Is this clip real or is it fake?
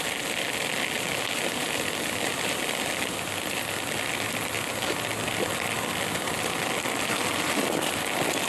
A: real